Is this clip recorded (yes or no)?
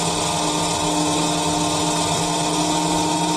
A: yes